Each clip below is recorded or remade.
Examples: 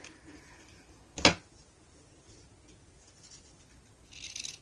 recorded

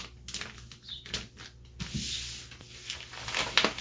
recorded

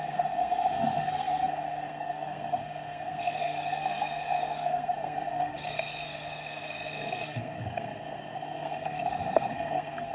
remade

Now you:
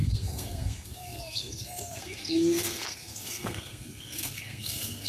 remade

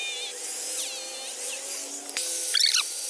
recorded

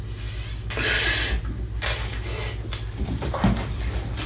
recorded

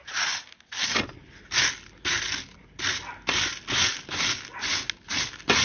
recorded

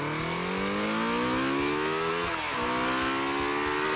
recorded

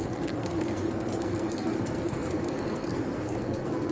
remade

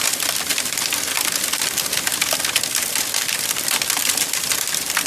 recorded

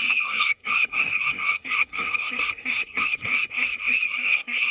remade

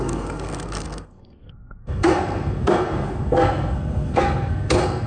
remade